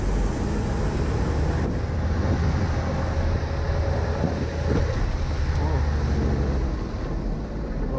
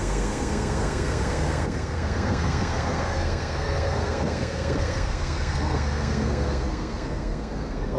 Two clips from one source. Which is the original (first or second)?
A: first